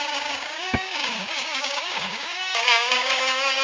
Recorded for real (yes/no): no